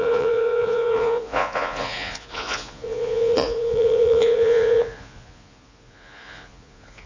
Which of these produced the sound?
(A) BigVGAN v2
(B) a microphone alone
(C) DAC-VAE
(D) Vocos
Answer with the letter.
D